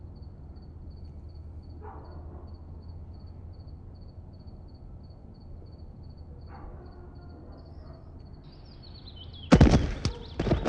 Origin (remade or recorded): recorded